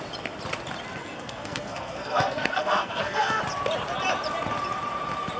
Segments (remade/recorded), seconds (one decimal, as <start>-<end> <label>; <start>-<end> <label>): 0.0-1.0 recorded; 1.0-3.4 remade; 3.4-5.4 recorded